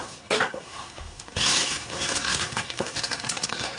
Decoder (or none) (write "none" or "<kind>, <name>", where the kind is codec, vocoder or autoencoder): codec, SNAC